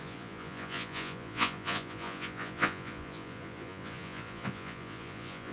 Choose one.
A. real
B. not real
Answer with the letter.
B